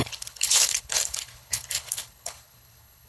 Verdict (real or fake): fake